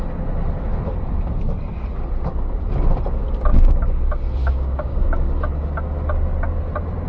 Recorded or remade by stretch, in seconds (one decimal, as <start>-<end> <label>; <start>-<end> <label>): 0.0-3.5 recorded; 3.5-4.0 remade; 4.0-4.4 recorded; 4.4-5.3 remade; 5.3-7.1 recorded